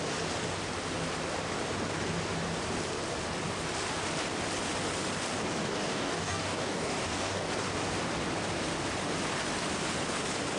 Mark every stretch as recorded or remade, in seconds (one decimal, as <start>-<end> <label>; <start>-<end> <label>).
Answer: 0.0-5.6 recorded; 5.6-7.5 remade; 7.5-10.6 recorded